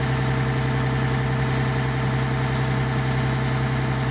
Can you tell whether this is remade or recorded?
recorded